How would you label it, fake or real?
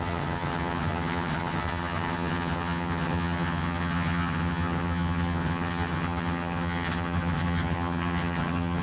fake